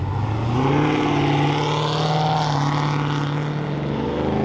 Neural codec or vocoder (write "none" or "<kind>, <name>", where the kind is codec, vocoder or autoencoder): none